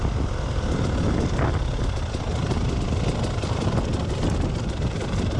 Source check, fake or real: real